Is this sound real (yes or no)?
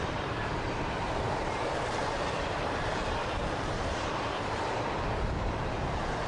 no